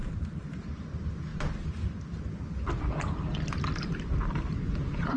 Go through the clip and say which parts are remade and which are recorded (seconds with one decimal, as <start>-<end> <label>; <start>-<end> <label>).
0.0-0.6 recorded; 0.6-1.3 remade; 1.3-4.1 recorded; 4.1-5.2 remade